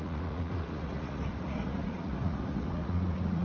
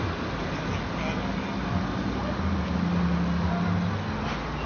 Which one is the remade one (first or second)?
first